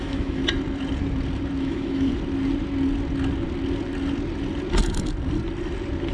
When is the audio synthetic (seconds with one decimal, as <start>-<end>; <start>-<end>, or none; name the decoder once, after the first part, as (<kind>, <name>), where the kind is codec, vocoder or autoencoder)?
0.0-0.4 (autoencoder, DAC-VAE); 1.6-2.1